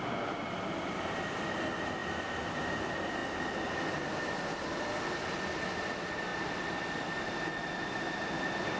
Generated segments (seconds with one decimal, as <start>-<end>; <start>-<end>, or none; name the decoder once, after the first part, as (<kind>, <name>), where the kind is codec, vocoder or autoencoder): none